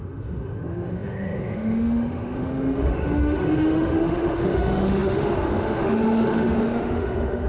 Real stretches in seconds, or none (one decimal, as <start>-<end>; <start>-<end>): none